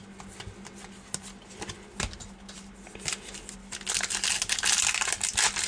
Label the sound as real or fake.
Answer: real